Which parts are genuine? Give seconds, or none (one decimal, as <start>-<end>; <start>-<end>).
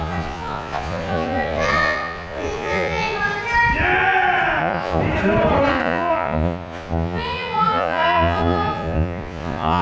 3.3-4.6; 5.0-5.7